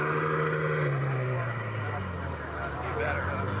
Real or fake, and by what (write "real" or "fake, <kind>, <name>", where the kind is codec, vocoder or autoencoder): real